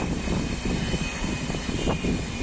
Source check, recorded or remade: recorded